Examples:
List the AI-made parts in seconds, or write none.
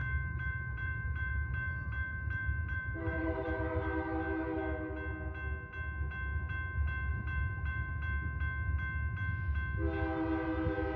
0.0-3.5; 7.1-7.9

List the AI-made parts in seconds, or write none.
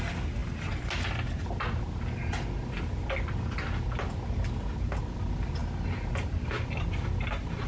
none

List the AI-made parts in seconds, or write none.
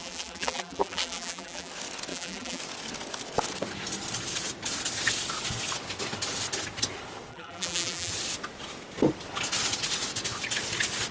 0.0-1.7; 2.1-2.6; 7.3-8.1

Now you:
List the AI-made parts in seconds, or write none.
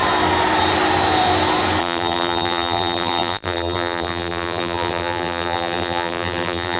1.8-6.8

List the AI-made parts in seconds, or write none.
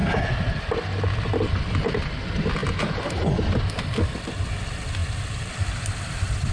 none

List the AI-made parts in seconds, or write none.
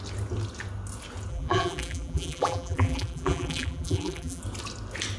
1.3-4.4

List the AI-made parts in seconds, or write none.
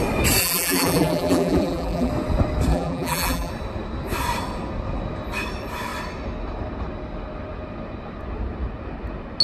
0.4-2.1; 2.7-3.5